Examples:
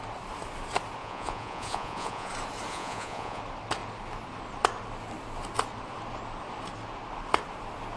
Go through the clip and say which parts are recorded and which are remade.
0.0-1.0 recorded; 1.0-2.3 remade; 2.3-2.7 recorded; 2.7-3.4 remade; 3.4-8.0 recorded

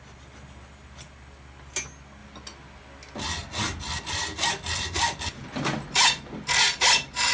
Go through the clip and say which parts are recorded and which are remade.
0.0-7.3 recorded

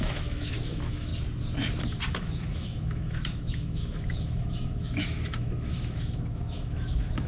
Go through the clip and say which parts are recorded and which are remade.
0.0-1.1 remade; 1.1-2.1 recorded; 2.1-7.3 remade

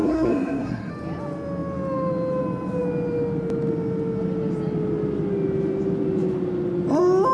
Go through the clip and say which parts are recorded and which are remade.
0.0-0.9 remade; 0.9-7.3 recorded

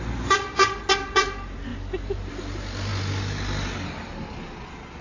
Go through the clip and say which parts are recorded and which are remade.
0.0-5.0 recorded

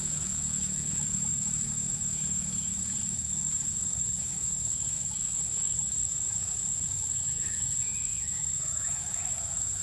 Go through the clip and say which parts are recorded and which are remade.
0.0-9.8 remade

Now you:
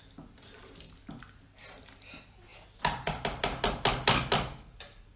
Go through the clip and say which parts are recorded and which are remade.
0.0-5.2 recorded

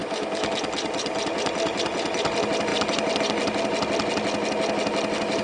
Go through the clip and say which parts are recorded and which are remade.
0.0-0.5 remade; 0.5-5.4 recorded